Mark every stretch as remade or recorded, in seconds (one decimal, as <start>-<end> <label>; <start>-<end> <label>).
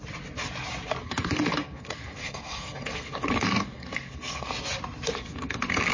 0.0-1.0 recorded; 1.0-4.5 remade; 4.5-5.1 recorded; 5.1-5.9 remade